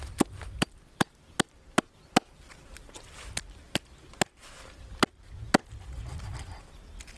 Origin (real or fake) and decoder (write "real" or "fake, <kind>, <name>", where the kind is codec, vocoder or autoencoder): real